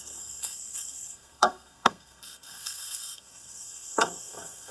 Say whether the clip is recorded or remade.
remade